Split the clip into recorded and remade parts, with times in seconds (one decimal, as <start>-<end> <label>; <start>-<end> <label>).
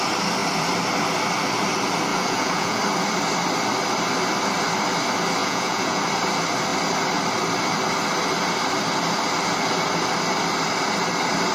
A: 0.0-2.1 recorded; 2.1-2.8 remade; 2.8-5.4 recorded; 5.4-6.0 remade; 6.0-11.5 recorded